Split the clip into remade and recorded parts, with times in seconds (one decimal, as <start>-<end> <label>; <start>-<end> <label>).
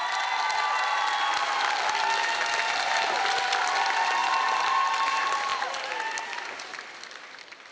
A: 0.0-7.7 recorded